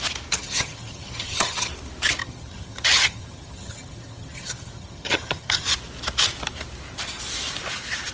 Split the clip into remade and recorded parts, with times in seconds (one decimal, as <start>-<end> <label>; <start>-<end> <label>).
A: 0.0-0.4 recorded; 0.4-1.7 remade; 1.7-2.2 recorded; 2.2-5.7 remade; 5.7-8.1 recorded